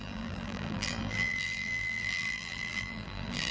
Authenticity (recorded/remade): remade